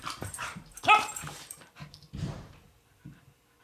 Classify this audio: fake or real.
fake